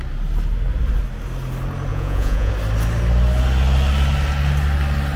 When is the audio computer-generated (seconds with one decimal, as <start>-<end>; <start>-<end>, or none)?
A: 1.9-2.5